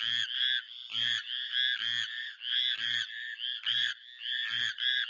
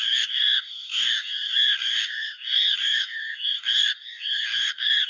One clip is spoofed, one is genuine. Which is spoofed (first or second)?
second